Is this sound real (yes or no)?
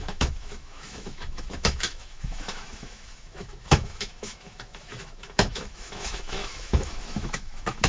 no